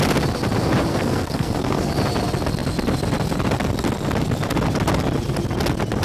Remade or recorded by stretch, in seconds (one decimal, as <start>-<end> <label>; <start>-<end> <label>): 0.0-0.9 recorded; 0.9-1.9 remade; 1.9-6.0 recorded